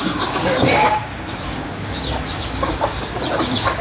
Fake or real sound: fake